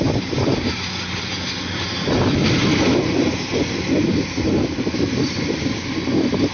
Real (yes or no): yes